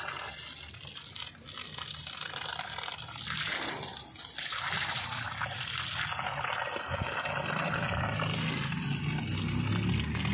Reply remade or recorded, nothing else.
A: recorded